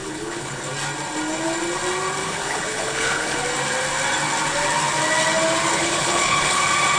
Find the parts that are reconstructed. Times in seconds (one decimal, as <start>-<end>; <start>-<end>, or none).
0.0-0.7; 2.2-3.4; 5.7-6.6